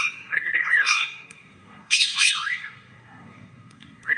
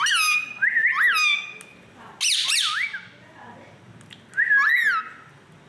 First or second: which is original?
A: second